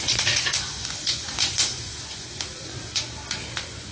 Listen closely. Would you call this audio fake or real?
fake